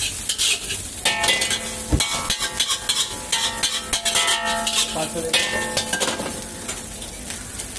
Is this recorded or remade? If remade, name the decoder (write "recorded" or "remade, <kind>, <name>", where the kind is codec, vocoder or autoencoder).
recorded